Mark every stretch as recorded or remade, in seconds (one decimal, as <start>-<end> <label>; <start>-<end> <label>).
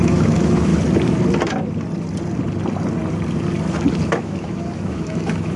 0.0-0.7 remade; 0.7-4.1 recorded; 4.1-5.6 remade